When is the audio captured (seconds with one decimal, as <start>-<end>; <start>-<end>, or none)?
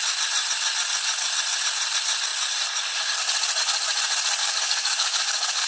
0.0-4.4